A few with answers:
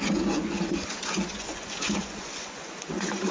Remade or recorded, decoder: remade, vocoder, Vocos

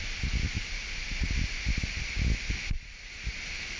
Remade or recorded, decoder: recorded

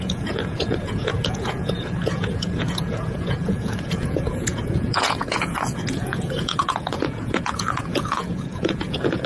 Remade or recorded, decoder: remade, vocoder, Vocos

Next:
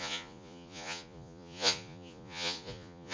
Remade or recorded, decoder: remade, vocoder, Vocos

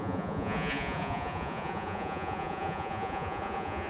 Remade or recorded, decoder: remade, vocoder, Vocos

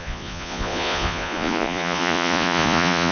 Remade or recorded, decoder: remade, vocoder, Vocos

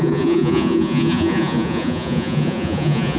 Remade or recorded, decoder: remade, vocoder, Vocos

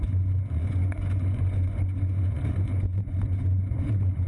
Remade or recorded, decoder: remade, vocoder, Vocos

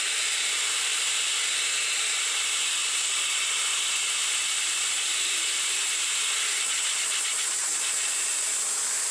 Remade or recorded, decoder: recorded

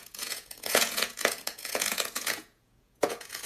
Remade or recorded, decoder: remade, vocoder, Vocos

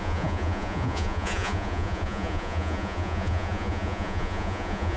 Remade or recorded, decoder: remade, vocoder, Vocos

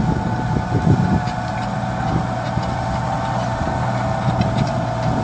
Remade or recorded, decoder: recorded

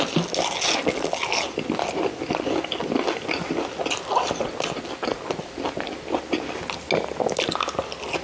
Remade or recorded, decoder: recorded